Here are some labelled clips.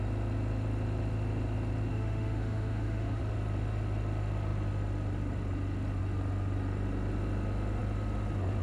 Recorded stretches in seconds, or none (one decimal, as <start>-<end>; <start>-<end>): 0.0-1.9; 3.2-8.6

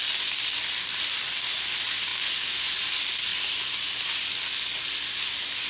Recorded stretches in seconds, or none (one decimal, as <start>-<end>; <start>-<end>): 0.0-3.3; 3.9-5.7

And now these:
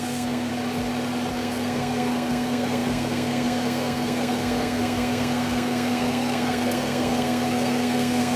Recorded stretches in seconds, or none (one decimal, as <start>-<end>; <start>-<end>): 0.5-1.3

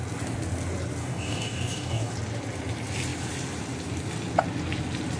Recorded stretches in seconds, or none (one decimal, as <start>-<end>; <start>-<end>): 0.0-1.0; 2.1-5.2

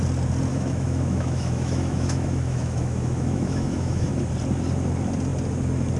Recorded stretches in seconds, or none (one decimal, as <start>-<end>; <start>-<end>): 0.0-0.5; 4.1-6.0

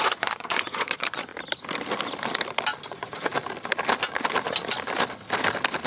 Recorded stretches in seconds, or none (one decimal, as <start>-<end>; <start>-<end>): 1.3-2.9; 3.3-5.9

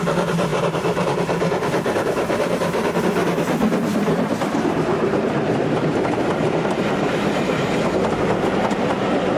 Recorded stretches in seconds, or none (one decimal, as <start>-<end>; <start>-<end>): 0.0-0.5; 3.0-3.9; 7.8-9.4